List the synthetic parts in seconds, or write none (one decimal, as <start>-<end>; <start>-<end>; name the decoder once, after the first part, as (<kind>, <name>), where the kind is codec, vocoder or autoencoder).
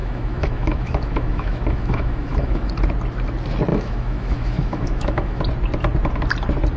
0.0-2.7 (autoencoder, DAC-VAE); 3.7-5.4